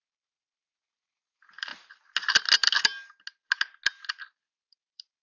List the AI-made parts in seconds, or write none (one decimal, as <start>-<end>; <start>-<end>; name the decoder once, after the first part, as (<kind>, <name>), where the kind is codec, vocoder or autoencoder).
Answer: 0.0-1.7 (vocoder, BigVGAN v2); 4.4-5.2